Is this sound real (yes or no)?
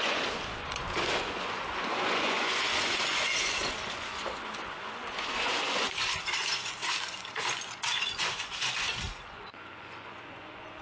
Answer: no